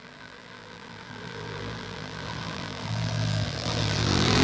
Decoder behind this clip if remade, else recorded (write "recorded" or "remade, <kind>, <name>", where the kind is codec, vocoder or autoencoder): remade, vocoder, BigVGAN v2